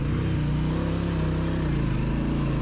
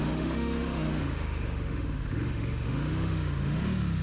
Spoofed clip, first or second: second